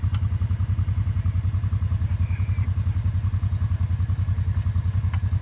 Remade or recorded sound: recorded